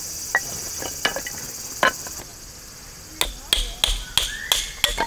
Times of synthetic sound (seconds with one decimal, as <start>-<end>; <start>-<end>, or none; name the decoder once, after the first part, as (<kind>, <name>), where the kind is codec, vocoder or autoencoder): 1.1-1.6 (vocoder, BigVGAN v2)